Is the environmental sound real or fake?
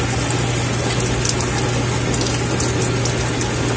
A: real